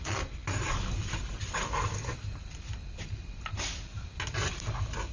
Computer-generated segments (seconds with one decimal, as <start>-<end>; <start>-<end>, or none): 0.4-3.5